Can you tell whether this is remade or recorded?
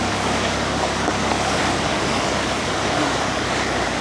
remade